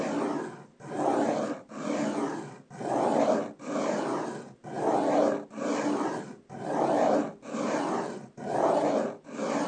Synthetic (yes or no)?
no